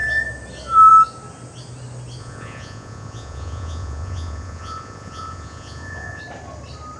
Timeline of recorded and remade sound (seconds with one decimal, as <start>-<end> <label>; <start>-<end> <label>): 0.0-2.2 recorded; 2.2-6.2 remade; 6.2-7.0 recorded